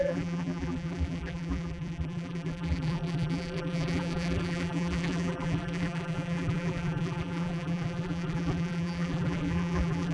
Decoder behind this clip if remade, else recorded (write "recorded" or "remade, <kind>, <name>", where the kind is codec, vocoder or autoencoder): remade, vocoder, BigVGAN v2